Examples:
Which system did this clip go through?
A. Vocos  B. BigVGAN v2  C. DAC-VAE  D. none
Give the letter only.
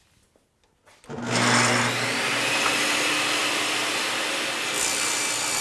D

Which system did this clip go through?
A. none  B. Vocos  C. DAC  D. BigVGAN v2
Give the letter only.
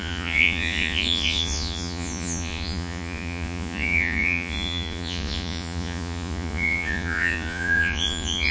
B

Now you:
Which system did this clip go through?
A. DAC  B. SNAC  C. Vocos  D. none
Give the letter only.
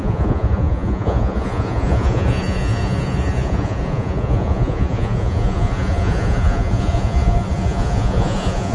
C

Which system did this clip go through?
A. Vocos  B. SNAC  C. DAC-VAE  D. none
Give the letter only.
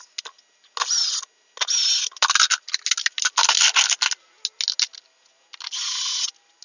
D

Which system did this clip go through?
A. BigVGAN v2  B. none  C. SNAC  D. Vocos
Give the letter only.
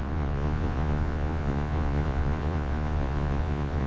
D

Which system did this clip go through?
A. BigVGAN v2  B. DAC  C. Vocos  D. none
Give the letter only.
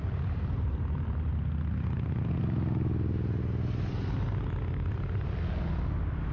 D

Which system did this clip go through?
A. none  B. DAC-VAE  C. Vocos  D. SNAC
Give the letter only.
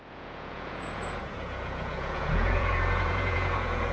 C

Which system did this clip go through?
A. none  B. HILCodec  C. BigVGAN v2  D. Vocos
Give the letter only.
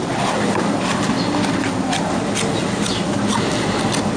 A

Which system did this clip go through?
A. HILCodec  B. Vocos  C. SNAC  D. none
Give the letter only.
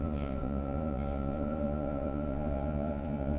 B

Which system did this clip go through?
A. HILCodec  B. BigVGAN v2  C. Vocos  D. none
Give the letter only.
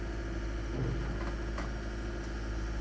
D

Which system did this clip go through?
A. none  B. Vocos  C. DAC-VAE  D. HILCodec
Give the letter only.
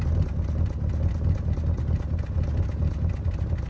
A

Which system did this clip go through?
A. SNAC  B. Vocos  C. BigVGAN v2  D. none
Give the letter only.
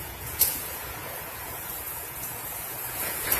B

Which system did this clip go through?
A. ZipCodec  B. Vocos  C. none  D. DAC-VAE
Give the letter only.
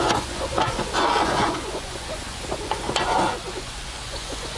B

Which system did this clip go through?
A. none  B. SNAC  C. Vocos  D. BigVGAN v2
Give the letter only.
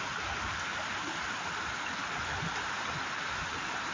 A